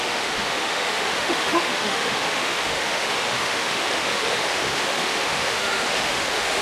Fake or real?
fake